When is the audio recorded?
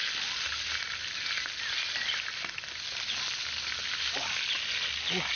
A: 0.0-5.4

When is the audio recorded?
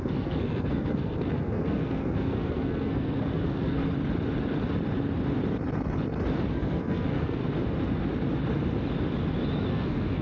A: 3.8-6.5; 7.4-9.7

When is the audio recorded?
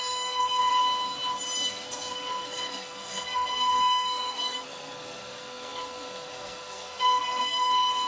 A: 0.7-1.7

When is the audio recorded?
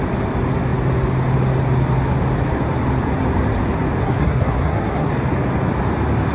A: 0.0-4.0; 5.1-6.3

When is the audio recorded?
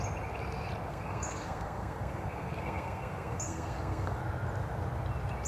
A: 0.0-0.9; 4.2-5.5